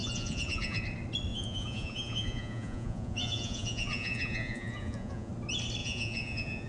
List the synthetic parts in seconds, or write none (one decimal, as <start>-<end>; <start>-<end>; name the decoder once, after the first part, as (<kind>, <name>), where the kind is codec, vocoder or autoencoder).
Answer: 0.0-0.8 (vocoder, Vocos); 1.3-5.3; 5.8-6.7